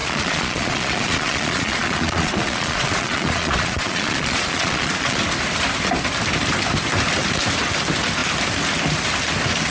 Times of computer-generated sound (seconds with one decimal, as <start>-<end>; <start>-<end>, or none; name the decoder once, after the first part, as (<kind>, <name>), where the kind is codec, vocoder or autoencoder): 0.0-5.2 (vocoder, Vocos)